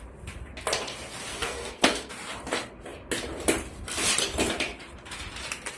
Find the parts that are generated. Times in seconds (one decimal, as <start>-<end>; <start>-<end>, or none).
1.3-2.1